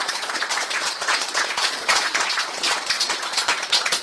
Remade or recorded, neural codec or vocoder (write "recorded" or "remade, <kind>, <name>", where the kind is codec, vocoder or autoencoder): remade, vocoder, Vocos